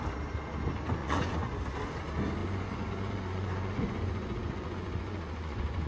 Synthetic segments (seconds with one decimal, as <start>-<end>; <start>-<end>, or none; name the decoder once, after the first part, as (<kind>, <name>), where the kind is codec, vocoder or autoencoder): 1.0-1.6 (vocoder, Vocos); 2.4-5.9